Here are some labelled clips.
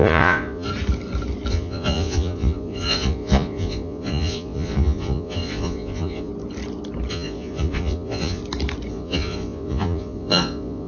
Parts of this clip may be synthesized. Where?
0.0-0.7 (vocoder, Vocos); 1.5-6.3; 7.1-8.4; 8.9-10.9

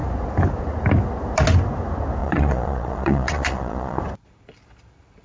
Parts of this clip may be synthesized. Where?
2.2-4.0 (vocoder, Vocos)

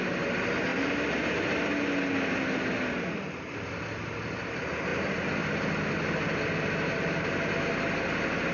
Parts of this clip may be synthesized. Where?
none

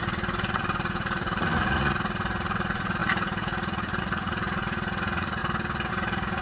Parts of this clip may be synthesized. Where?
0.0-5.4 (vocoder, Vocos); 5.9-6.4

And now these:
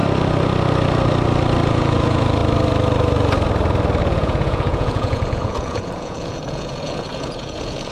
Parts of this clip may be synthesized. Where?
1.7-2.4 (vocoder, Vocos); 4.0-7.9

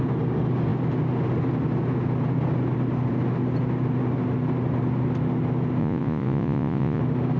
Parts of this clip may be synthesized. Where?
5.8-7.0 (vocoder, Vocos)